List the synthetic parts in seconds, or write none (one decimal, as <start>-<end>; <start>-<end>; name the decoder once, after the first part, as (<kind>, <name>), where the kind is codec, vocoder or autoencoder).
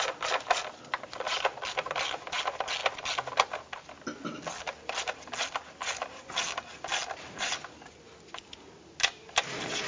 none